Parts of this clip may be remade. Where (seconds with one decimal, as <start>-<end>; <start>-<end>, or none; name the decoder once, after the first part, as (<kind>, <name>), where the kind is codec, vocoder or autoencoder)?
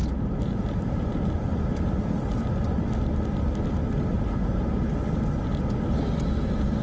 none